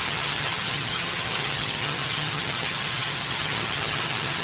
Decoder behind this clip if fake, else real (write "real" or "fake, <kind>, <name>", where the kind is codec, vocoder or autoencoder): fake, vocoder, HiFi-GAN